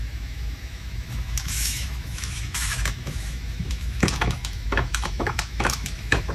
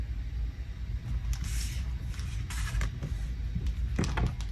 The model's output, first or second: first